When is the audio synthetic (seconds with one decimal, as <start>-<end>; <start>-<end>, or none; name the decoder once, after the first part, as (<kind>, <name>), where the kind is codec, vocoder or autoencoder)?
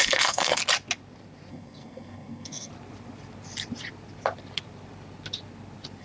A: 0.0-0.6 (codec, SNAC); 1.5-2.7